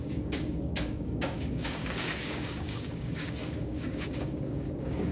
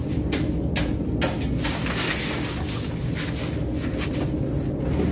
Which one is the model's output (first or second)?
first